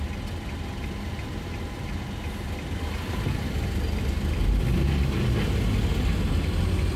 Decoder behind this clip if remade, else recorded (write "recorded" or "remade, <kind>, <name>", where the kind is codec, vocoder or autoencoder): recorded